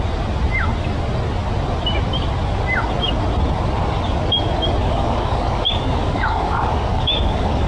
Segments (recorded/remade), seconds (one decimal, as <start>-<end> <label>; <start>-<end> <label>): 0.0-4.8 recorded; 4.8-7.7 remade